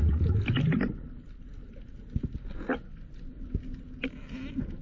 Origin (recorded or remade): recorded